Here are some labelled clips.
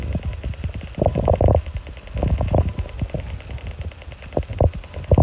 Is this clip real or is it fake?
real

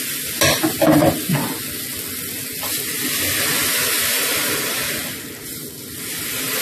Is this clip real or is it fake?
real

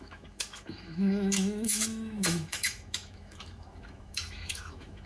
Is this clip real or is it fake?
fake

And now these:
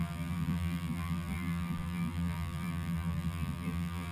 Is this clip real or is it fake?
fake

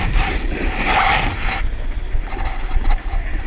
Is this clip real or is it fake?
real